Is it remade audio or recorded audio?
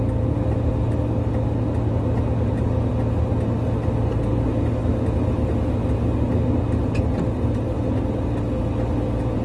recorded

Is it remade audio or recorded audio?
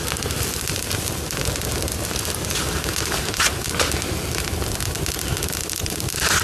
recorded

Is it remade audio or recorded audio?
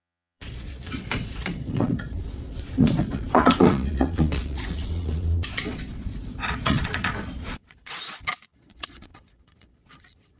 remade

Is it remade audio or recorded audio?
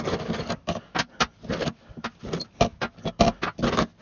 recorded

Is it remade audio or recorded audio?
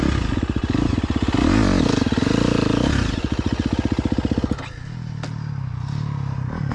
recorded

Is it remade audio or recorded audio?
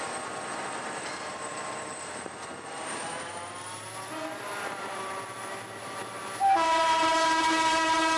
remade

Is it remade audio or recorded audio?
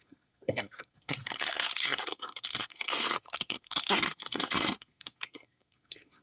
remade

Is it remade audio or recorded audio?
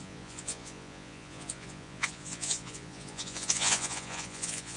remade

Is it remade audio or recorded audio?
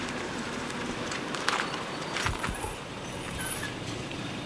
remade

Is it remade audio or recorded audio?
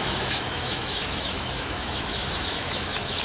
remade